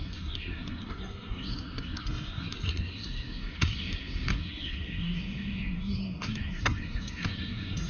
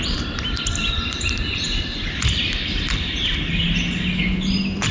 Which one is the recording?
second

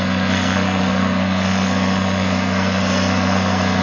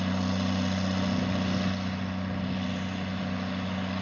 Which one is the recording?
second